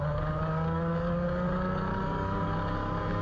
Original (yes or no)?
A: no